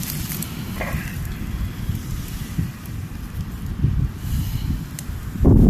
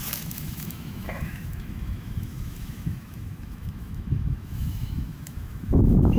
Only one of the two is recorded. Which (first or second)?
first